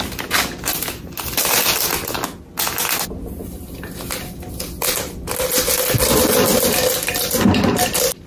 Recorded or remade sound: recorded